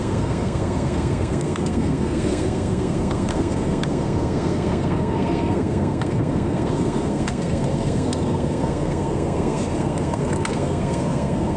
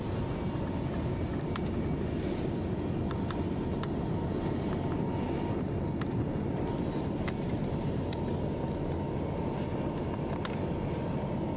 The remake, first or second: first